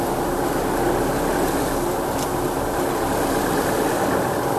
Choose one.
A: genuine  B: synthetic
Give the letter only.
B